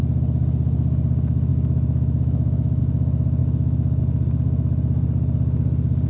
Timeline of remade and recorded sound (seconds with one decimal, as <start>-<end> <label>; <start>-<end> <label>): 0.0-1.5 recorded; 1.5-2.8 remade; 2.8-3.4 recorded; 3.4-4.0 remade; 4.0-6.1 recorded